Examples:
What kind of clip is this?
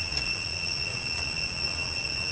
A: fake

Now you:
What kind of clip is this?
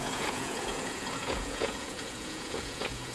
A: fake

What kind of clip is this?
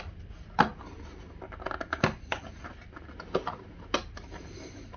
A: real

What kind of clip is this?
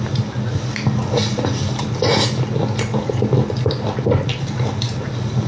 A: real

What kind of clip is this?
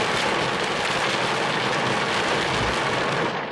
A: real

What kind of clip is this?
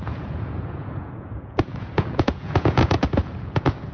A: fake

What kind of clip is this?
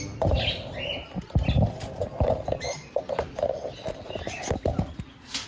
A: real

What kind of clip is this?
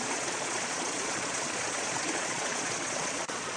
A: fake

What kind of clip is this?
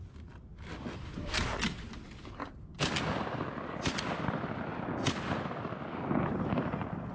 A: real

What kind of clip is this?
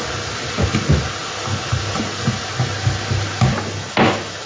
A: real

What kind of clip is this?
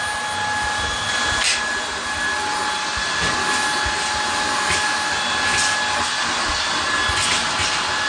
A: real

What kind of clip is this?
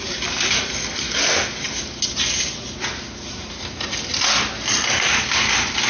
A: real